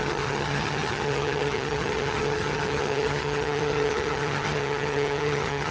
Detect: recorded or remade remade